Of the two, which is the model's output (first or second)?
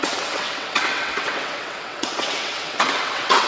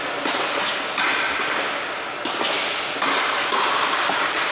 first